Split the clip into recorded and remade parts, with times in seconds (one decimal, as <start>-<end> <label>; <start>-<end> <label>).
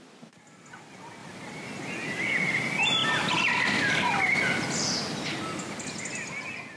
0.0-6.8 recorded